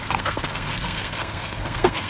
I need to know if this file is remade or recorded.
remade